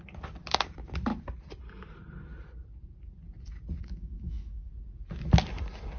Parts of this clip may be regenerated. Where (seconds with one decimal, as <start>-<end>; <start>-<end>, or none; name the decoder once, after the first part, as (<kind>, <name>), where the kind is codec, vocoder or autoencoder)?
3.8-4.7 (autoencoder, DAC-VAE)

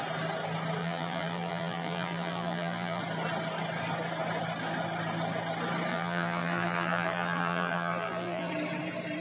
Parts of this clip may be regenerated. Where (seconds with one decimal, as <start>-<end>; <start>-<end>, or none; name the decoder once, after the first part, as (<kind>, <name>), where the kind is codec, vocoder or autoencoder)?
0.8-3.0 (vocoder, BigVGAN v2); 5.9-8.5

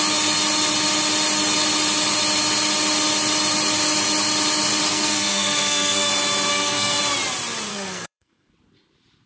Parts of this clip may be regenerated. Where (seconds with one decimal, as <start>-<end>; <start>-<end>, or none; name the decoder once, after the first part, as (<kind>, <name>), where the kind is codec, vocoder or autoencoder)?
4.9-6.1 (codec, SNAC); 6.5-7.0; 7.7-8.5

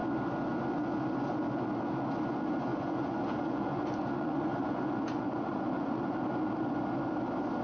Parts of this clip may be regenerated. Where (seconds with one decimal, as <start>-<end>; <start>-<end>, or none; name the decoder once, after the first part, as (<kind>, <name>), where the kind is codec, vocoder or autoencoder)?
2.7-6.1 (vocoder, Vocos)

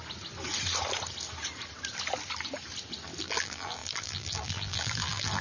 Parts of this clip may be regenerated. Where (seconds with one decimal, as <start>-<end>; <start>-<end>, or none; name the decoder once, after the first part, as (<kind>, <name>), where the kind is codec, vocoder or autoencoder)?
3.2-5.4 (vocoder, BigVGAN v2)

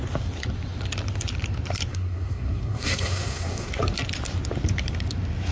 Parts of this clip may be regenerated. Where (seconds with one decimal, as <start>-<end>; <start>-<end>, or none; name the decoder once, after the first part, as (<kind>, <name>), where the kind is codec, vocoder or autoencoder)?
1.9-3.7 (codec, SNAC)